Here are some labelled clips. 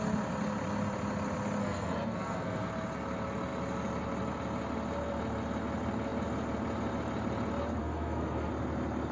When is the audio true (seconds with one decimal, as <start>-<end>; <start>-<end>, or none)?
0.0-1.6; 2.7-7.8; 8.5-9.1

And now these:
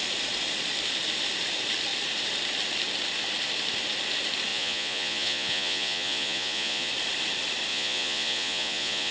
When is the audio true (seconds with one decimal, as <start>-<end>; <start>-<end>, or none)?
0.0-4.5; 6.9-7.7

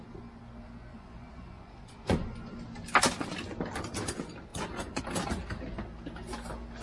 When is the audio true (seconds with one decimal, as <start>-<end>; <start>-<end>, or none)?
0.0-0.9; 2.6-4.5; 5.0-6.8